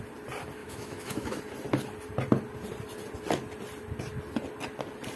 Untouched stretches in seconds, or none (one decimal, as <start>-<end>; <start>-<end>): 0.0-0.6; 1.4-5.2